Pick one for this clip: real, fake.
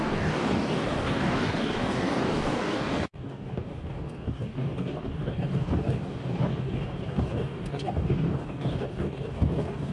fake